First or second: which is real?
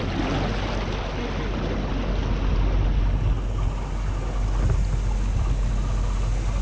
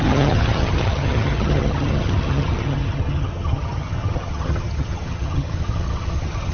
first